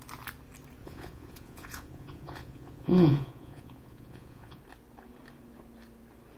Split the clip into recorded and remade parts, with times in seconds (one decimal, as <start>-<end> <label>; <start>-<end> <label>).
0.0-0.8 recorded; 0.8-4.6 remade; 4.6-6.4 recorded